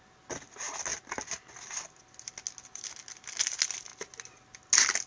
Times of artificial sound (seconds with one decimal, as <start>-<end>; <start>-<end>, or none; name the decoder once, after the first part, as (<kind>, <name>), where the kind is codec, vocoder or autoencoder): none